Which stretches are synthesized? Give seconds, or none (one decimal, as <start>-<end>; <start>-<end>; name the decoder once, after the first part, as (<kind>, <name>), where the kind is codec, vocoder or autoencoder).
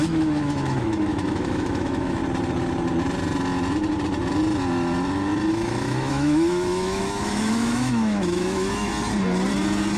0.0-2.2 (autoencoder, DAC-VAE); 5.5-8.9